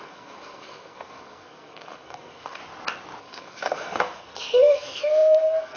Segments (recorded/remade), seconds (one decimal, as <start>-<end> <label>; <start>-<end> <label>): 0.0-2.6 remade; 2.6-3.2 recorded; 3.2-5.8 remade